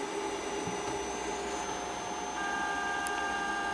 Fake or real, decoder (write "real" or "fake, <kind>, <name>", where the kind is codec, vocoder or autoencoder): real